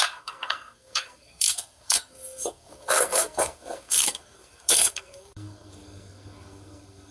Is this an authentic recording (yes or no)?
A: no